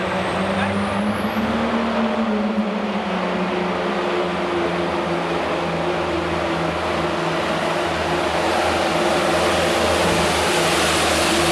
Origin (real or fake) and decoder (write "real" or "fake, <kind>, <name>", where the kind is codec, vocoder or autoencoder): real